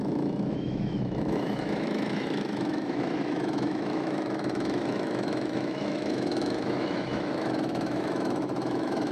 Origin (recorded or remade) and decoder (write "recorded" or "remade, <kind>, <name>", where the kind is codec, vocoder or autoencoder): remade, autoencoder, DAC-VAE